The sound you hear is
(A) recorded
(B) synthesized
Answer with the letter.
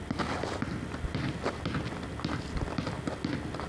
A